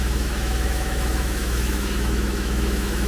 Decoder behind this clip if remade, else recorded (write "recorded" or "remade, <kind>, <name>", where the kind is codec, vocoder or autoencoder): remade, autoencoder, DAC-VAE